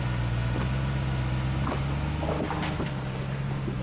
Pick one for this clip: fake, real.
real